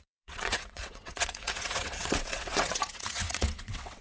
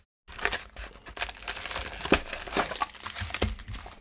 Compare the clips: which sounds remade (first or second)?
first